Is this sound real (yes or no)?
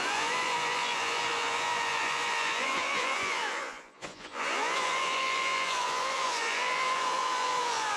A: no